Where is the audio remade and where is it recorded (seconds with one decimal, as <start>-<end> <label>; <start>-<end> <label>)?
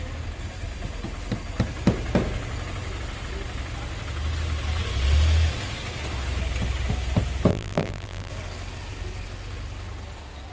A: 0.0-7.5 recorded; 7.5-8.3 remade; 8.3-10.5 recorded